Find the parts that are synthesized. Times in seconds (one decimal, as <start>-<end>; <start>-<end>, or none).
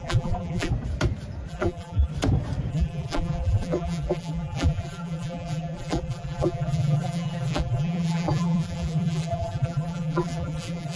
0.0-0.7; 1.5-2.1; 2.7-11.0